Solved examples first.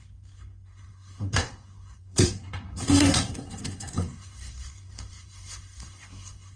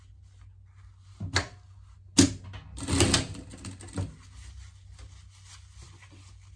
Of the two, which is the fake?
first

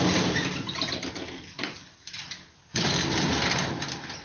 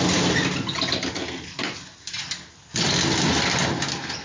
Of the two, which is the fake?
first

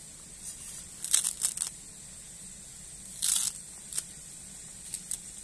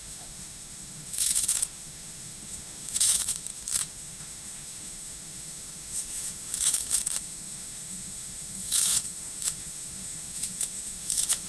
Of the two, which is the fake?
second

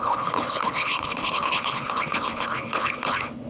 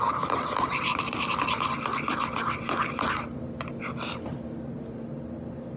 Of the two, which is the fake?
first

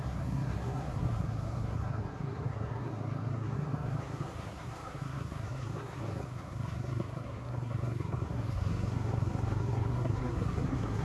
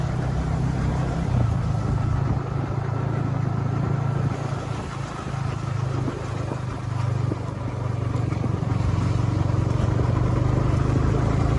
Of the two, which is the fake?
first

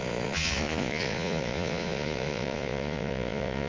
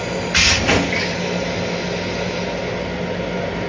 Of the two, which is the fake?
first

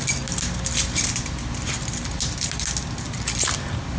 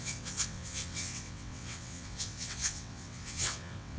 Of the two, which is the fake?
second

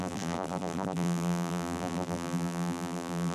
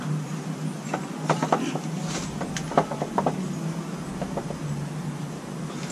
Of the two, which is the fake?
first